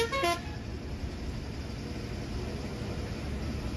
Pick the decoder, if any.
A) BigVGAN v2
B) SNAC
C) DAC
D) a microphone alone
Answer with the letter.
D